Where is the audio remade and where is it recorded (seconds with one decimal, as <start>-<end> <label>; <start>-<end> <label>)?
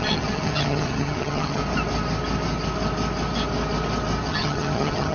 0.0-1.6 remade; 1.6-4.3 recorded; 4.3-5.1 remade